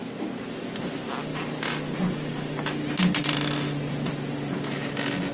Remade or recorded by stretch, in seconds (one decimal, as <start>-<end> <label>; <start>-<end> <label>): 0.0-5.3 recorded